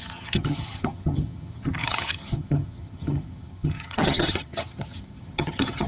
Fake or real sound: fake